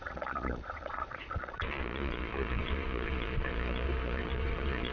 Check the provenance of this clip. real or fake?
fake